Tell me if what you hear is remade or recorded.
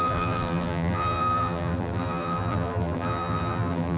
remade